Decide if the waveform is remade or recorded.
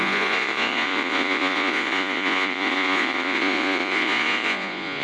remade